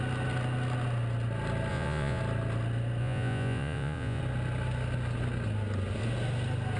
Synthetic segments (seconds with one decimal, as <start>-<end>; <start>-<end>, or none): 1.7-2.2; 3.0-4.2